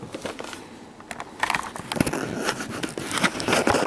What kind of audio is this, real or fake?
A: real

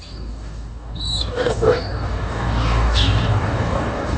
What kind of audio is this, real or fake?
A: fake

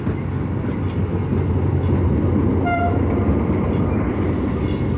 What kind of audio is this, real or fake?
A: real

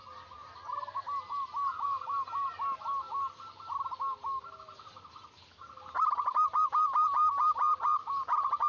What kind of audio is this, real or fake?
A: real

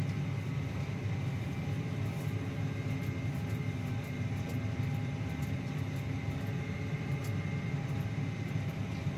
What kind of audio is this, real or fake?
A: real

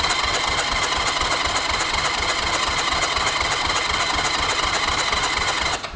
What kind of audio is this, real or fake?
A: real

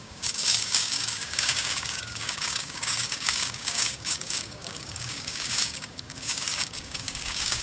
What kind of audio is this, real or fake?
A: fake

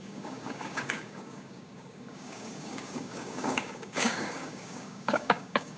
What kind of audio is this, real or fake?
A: fake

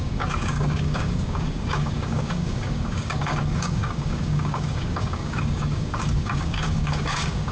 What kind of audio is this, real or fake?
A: fake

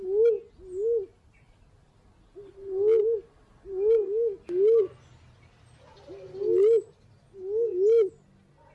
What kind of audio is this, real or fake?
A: real